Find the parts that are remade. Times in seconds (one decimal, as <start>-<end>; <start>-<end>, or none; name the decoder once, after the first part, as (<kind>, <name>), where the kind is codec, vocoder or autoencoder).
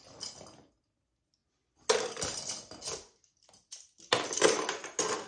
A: none